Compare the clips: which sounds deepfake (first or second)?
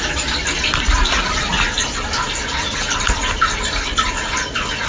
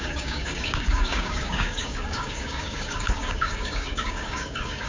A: second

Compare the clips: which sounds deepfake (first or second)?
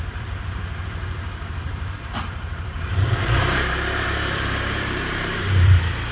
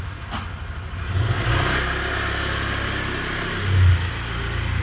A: first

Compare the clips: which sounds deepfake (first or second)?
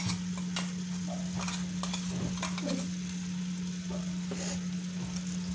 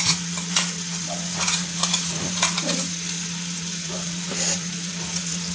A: second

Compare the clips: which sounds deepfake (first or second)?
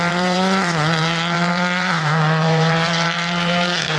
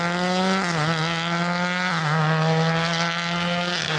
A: first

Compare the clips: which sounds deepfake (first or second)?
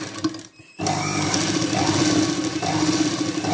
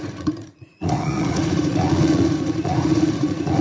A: second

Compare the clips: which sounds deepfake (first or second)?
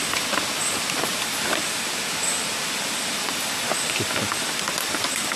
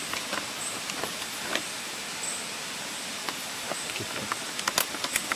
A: first